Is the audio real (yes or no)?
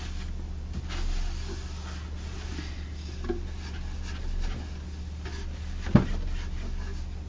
yes